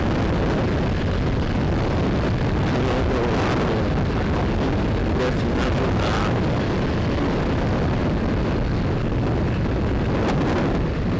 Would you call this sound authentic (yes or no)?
yes